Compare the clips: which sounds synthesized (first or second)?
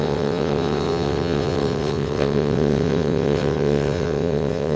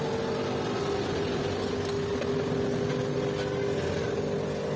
first